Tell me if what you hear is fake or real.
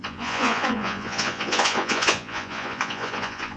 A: fake